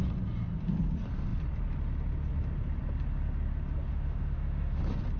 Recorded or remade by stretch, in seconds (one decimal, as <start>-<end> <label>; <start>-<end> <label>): 0.0-3.9 recorded; 3.9-4.8 remade; 4.8-5.2 recorded